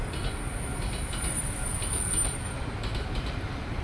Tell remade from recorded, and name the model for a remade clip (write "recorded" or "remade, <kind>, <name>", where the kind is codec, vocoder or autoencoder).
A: recorded